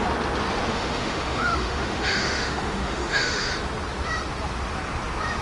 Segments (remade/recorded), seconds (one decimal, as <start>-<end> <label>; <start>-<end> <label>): 0.0-0.7 recorded; 0.7-3.5 remade; 3.5-5.4 recorded